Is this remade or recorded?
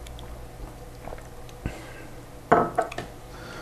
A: recorded